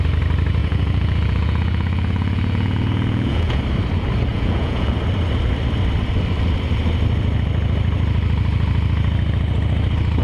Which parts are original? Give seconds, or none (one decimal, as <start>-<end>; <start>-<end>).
0.0-0.6; 3.6-4.3; 4.9-10.2